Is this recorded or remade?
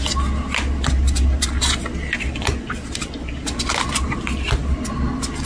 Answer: recorded